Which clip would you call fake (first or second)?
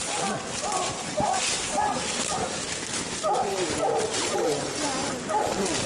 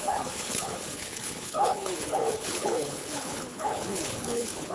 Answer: second